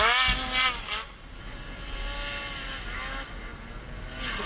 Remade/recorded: recorded